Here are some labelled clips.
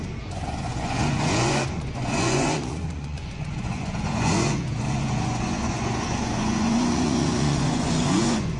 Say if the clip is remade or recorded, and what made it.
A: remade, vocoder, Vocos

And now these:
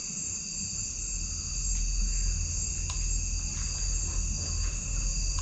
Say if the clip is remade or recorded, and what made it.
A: recorded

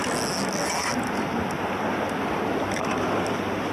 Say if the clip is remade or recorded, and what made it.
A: recorded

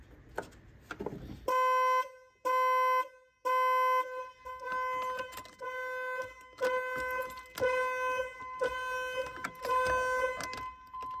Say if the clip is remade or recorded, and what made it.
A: recorded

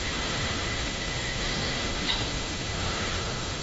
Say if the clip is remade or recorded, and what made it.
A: remade, autoencoder, DAC-VAE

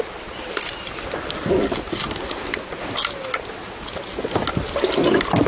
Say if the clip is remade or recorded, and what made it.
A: recorded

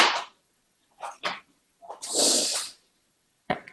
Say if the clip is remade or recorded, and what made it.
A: remade, vocoder, Vocos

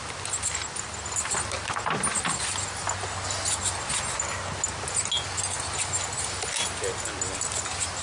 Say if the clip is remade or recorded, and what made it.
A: recorded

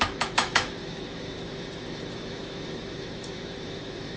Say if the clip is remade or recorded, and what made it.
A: remade, autoencoder, DAC-VAE